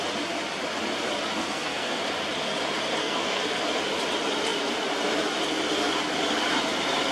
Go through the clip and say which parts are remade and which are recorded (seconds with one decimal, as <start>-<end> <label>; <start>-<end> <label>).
0.0-1.4 recorded; 1.4-2.0 remade; 2.0-3.0 recorded; 3.0-3.6 remade; 3.6-7.1 recorded